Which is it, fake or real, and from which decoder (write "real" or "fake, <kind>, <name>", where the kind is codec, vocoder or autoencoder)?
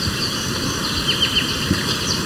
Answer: fake, vocoder, BigVGAN v2